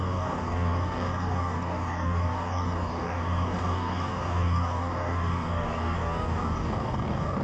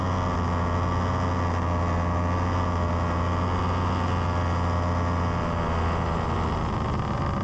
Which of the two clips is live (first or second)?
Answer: second